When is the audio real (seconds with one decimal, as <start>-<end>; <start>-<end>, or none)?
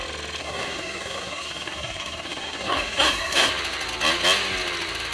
0.0-0.4; 3.5-5.1